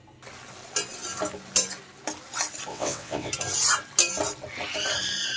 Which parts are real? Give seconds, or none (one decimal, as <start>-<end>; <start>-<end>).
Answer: 0.0-2.7; 3.3-5.4